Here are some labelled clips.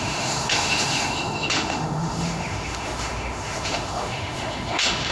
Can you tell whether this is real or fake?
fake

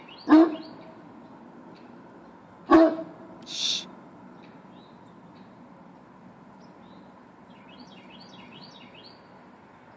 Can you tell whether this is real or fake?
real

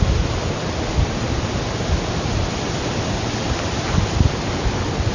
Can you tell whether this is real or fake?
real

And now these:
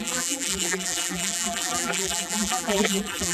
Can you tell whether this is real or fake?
fake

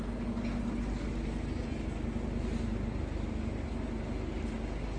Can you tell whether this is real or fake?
real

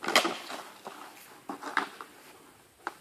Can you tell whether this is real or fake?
real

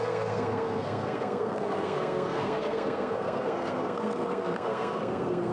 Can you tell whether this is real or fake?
fake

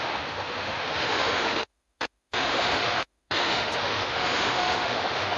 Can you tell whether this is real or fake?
fake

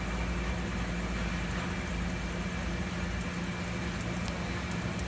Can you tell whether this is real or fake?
real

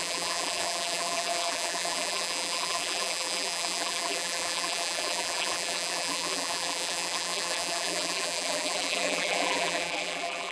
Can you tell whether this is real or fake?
fake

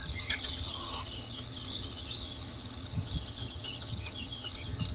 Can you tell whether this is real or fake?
fake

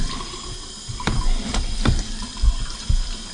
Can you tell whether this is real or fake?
real